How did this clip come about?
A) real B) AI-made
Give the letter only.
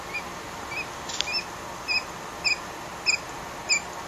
A